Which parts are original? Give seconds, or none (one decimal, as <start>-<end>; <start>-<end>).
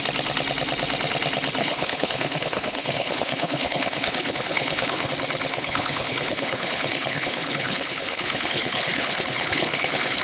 0.0-1.6; 5.1-5.5